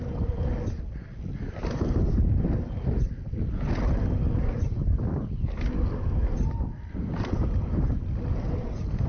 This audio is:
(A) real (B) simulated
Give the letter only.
A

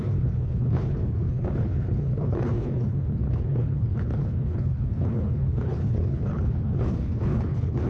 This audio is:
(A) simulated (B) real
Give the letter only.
A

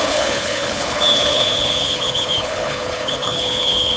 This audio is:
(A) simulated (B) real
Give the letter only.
A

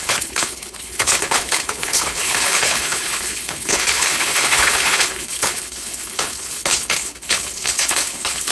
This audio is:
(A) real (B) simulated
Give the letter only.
B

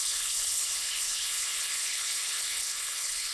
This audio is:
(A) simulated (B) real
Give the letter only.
A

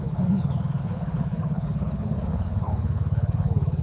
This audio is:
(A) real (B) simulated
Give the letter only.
B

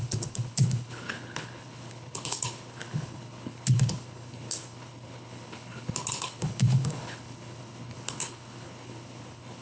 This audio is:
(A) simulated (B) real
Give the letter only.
A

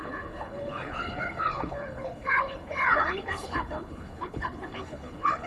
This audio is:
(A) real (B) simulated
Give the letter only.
B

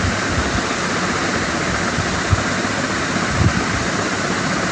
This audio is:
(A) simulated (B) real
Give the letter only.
B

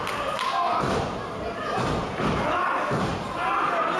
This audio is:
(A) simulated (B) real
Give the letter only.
B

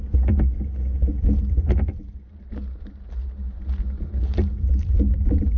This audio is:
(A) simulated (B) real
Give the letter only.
B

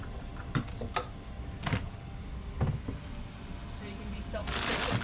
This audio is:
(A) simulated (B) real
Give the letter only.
B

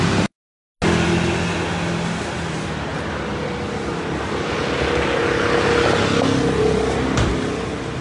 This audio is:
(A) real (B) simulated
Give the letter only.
A